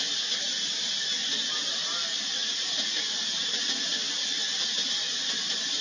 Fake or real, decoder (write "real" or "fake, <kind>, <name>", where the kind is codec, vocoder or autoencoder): real